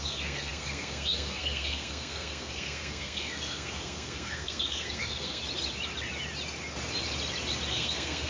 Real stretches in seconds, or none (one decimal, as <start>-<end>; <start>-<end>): 5.4-7.7